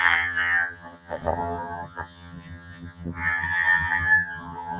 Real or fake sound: fake